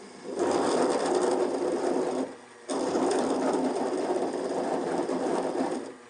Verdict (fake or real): fake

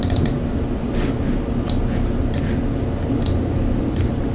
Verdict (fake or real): real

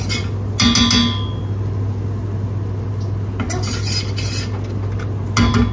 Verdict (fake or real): real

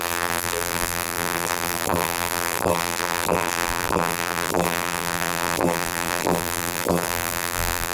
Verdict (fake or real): fake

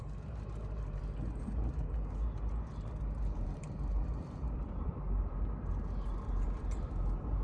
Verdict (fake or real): fake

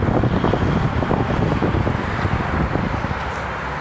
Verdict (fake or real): real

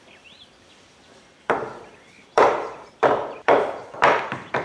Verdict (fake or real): fake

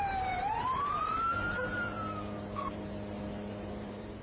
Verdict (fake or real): fake